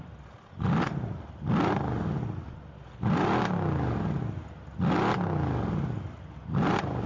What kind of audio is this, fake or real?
real